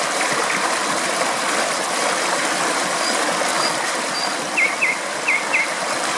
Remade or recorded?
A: recorded